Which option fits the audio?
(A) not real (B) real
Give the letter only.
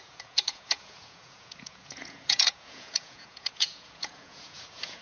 A